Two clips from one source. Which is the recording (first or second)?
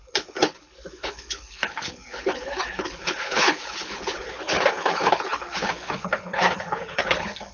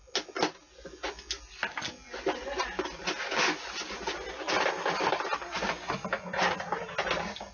second